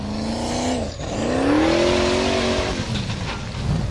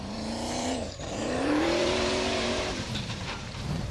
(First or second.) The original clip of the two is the first